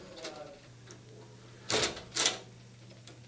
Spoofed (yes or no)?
no